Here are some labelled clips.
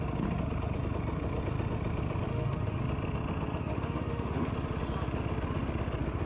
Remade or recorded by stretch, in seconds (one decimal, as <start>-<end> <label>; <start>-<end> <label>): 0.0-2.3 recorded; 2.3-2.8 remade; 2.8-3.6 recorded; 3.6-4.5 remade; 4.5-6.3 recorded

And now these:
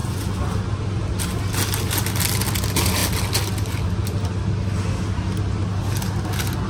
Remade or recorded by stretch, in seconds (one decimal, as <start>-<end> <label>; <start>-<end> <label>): 0.0-6.7 recorded

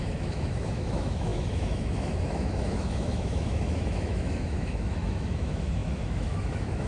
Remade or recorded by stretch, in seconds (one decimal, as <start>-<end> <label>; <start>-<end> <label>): 0.0-6.9 remade

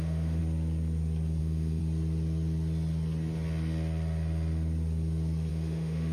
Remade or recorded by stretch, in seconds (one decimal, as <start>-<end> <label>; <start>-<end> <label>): 0.0-0.4 remade; 0.4-1.4 recorded; 1.4-1.8 remade; 1.8-5.5 recorded; 5.5-6.1 remade

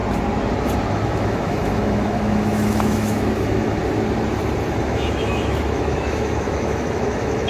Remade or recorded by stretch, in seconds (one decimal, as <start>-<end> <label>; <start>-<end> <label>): 0.0-0.9 recorded; 0.9-3.8 remade; 3.8-4.7 recorded; 4.7-7.5 remade

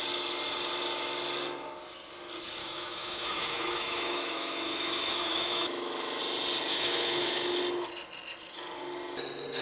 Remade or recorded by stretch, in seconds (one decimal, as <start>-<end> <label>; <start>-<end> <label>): 0.0-2.6 recorded; 2.6-6.2 remade; 6.2-6.7 recorded; 6.7-7.6 remade; 7.6-9.6 recorded

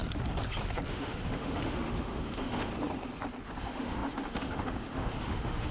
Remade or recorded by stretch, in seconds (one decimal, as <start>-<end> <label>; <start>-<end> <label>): 0.0-0.9 recorded; 0.9-2.7 remade; 2.7-3.6 recorded; 3.6-5.7 remade